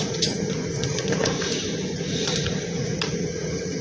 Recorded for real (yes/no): no